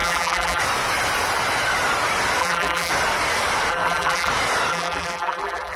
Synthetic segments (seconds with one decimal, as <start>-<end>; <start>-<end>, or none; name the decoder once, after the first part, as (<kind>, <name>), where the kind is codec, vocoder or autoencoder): 0.0-0.6 (vocoder, BigVGAN v2); 2.4-2.9; 3.7-4.3; 4.7-5.8